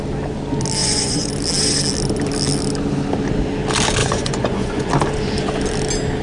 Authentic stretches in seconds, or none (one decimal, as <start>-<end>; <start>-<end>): 0.0-0.8; 1.3-4.0; 4.9-6.2